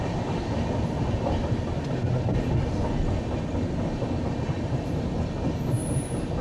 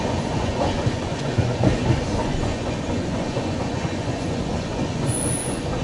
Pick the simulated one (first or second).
second